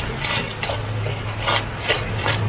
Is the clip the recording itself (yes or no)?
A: yes